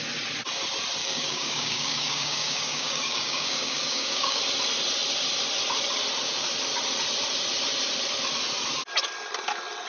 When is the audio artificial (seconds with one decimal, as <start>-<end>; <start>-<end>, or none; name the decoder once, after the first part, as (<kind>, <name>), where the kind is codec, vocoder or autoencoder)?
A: 1.0-4.4 (codec, DAC)